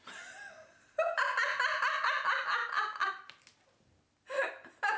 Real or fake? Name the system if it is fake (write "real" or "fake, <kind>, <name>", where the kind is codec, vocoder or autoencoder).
real